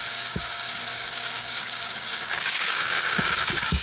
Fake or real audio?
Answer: fake